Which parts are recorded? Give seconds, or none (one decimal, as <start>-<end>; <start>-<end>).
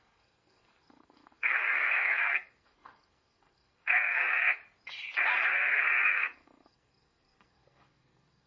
4.6-5.5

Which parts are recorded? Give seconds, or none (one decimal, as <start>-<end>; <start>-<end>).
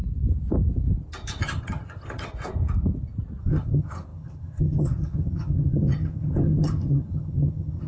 0.0-1.4; 2.3-3.4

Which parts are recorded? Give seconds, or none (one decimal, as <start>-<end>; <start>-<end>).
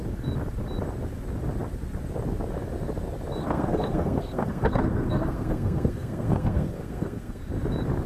0.0-3.4; 7.4-8.1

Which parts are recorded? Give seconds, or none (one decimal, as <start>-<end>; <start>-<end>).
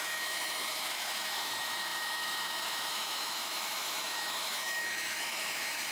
none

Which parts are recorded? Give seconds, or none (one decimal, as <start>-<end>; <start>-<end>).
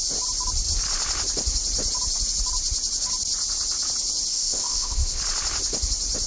0.0-4.3; 5.2-6.3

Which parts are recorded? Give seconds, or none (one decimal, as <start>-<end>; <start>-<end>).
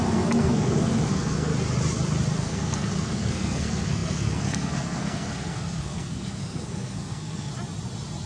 1.5-2.4; 7.5-8.3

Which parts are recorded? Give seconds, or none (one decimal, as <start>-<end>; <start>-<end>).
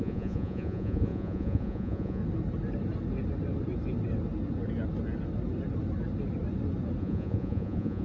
2.2-7.0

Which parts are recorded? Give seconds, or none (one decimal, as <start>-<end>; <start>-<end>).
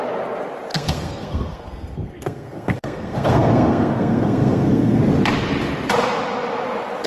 0.0-0.7; 5.0-7.1